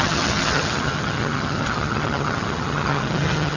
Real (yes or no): no